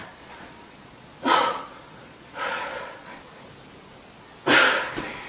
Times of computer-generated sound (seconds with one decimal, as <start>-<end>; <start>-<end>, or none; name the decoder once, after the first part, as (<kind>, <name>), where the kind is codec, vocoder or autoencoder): 0.0-3.2 (vocoder, Vocos)